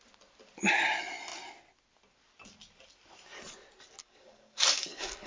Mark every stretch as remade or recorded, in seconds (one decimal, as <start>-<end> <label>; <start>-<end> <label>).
0.0-4.0 recorded; 4.0-5.3 remade